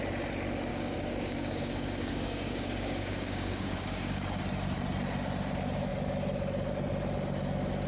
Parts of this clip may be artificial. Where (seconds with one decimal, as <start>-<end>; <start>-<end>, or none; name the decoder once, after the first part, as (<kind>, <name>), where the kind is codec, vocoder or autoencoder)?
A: 0.7-4.4 (codec, DAC)